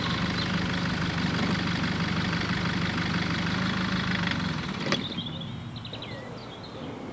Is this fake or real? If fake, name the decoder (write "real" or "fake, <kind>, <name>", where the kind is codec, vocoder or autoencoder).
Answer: real